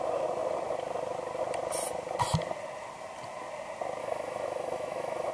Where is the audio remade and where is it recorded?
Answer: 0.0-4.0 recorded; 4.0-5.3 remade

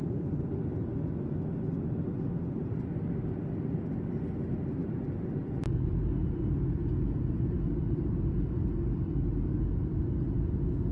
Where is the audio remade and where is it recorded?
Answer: 0.0-10.9 recorded

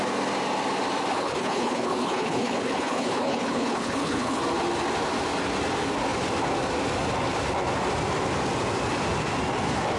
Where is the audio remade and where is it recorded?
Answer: 0.0-1.1 recorded; 1.1-4.4 remade; 4.4-10.0 recorded

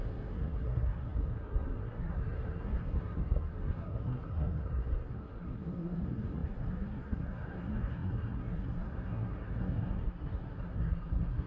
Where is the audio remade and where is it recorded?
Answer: 0.0-11.5 remade

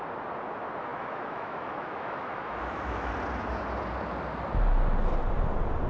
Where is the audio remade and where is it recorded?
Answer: 0.0-0.9 recorded; 0.9-3.1 remade; 3.1-5.9 recorded

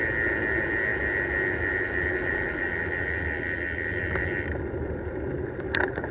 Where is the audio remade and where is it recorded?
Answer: 0.0-6.1 recorded